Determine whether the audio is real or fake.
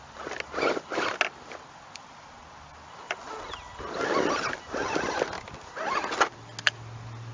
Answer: real